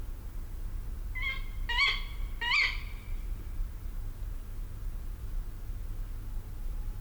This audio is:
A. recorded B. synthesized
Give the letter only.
A